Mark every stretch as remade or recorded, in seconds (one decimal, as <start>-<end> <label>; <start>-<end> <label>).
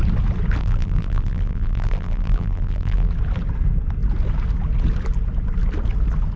0.0-0.6 recorded; 0.6-3.1 remade; 3.1-6.4 recorded